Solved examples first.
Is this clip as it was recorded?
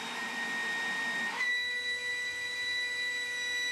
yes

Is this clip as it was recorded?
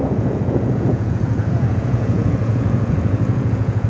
no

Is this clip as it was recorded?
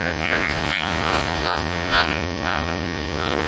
no